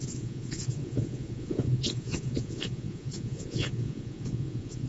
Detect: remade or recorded remade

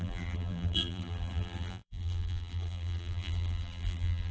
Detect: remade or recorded remade